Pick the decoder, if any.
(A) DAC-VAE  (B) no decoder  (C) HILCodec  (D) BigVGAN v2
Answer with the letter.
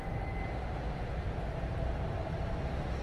B